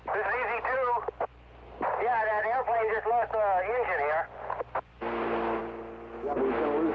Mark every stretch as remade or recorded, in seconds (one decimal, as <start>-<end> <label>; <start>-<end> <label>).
0.0-6.9 recorded